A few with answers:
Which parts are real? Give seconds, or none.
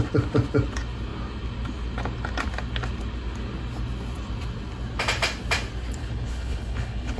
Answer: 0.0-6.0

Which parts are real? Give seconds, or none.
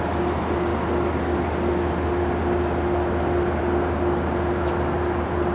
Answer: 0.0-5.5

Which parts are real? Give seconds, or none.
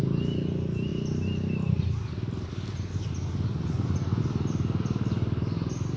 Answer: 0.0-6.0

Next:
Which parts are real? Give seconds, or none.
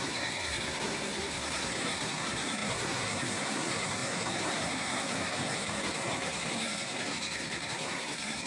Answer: none